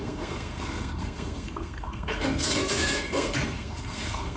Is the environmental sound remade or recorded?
remade